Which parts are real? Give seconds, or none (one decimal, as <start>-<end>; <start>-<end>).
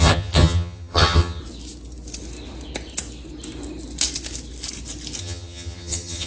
1.4-5.2